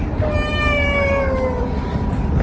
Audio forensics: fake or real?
real